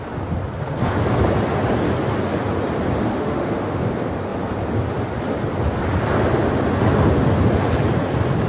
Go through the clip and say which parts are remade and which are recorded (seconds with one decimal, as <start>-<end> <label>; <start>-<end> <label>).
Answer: 0.0-3.1 recorded; 3.1-3.8 remade; 3.8-8.5 recorded